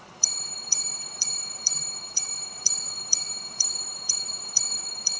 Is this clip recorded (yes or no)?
no